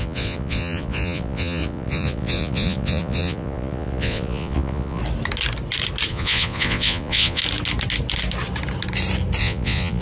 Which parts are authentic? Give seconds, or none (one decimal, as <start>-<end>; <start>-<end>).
5.0-6.1; 7.4-9.4